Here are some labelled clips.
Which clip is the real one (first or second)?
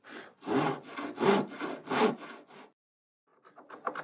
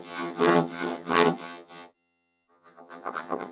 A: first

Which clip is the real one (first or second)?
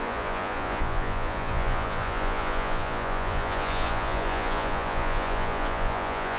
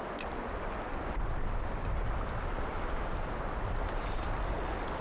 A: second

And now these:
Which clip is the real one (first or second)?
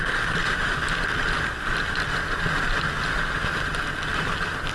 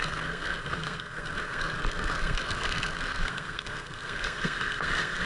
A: first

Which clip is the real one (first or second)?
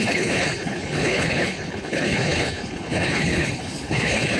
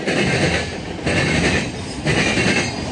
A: second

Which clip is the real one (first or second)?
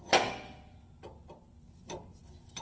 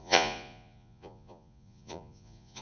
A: first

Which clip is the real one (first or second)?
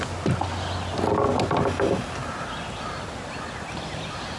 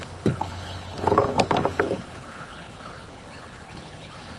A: first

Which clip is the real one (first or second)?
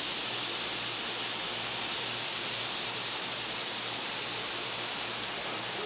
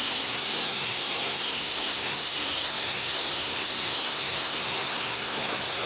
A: first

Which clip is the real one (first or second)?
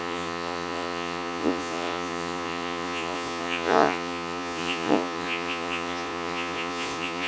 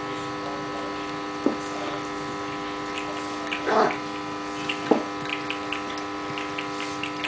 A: second